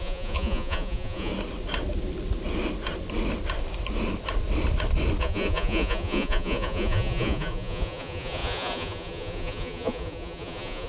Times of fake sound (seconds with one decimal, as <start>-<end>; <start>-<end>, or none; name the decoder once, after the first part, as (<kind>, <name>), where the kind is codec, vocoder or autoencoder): 0.0-1.3 (vocoder, Vocos); 5.2-10.9

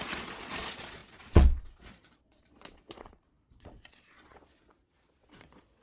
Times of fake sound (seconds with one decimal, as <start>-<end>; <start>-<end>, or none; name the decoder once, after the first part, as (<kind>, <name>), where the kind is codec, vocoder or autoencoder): 0.0-5.8 (vocoder, Vocos)

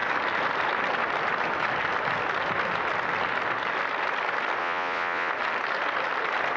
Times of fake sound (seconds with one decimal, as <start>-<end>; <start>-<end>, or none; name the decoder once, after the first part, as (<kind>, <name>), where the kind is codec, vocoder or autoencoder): 4.6-5.3 (vocoder, Vocos)

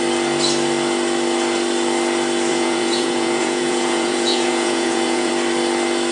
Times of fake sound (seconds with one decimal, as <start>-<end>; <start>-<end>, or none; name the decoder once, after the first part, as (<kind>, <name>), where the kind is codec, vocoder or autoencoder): 2.5-5.3 (vocoder, Vocos)

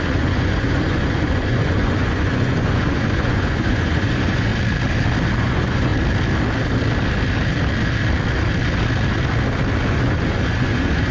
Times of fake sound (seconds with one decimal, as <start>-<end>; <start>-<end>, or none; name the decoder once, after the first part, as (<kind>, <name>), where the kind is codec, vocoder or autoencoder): 0.0-4.5 (vocoder, Vocos); 5.4-5.9; 9.9-11.1

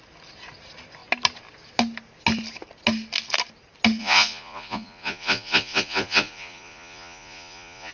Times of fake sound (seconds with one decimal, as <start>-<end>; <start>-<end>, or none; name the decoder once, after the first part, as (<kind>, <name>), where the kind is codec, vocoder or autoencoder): 4.0-7.9 (vocoder, Vocos)

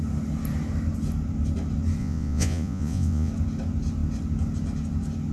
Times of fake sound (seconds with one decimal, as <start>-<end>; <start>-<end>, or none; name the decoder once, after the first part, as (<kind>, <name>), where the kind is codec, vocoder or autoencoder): 2.0-3.3 (vocoder, Vocos)

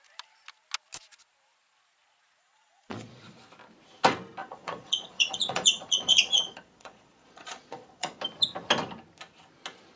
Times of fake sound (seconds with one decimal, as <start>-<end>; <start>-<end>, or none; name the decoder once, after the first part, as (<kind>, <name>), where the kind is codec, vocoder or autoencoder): 2.4-3.4 (vocoder, Vocos); 4.4-8.2